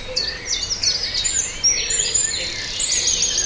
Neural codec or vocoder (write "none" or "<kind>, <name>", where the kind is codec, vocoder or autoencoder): none